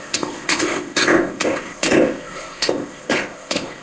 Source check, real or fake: fake